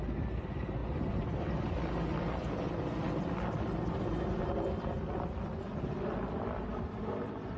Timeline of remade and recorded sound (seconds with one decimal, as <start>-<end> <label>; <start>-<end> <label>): 0.0-7.6 recorded